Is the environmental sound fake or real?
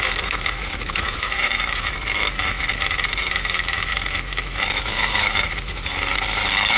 fake